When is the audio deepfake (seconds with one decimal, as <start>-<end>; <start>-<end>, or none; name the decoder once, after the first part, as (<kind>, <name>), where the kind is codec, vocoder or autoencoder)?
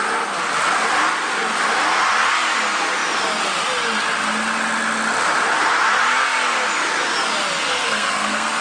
7.8-8.6 (codec, SNAC)